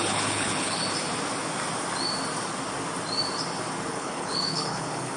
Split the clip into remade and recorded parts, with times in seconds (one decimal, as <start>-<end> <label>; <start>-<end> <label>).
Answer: 0.0-0.8 remade; 0.8-3.9 recorded; 3.9-5.2 remade